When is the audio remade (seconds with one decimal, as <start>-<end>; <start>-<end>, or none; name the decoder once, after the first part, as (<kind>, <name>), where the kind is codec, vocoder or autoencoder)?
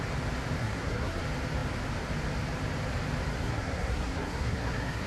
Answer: 0.6-1.2 (codec, SNAC); 3.3-5.1